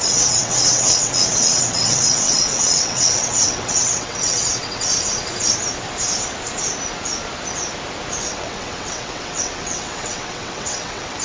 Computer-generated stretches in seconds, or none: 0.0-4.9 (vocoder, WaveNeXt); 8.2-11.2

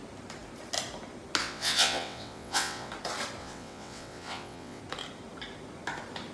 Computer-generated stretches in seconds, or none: 1.4-2.9 (vocoder, WaveNeXt); 3.4-4.8

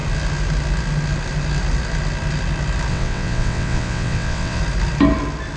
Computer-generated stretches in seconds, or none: 2.9-4.6 (vocoder, WaveNeXt)

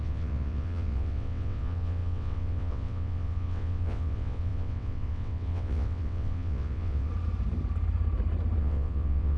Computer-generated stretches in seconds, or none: 0.0-7.1 (vocoder, WaveNeXt); 8.6-9.4

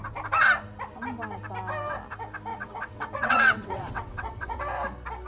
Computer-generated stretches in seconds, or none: 2.5-4.6 (vocoder, WaveNeXt)

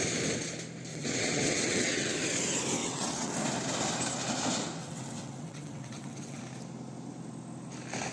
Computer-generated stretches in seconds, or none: 0.9-2.1 (vocoder, WaveNeXt); 2.8-3.3; 4.8-6.4